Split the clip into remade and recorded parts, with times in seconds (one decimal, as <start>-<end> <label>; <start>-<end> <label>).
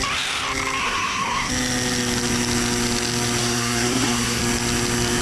0.0-0.8 recorded; 0.8-1.5 remade; 1.5-3.4 recorded; 3.4-4.4 remade; 4.4-5.2 recorded